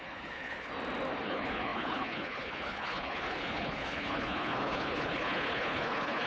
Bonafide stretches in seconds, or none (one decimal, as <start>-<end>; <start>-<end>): 0.7-1.2